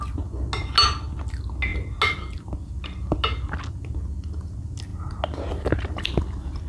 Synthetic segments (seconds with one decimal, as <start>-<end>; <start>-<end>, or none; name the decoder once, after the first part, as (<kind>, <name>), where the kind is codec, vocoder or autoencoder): none